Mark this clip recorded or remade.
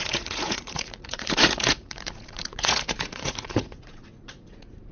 remade